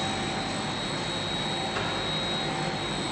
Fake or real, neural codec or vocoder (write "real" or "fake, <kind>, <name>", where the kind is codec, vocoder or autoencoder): real